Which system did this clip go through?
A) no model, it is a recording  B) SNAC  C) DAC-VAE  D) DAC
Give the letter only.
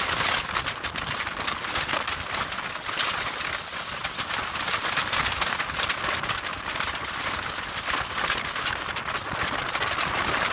A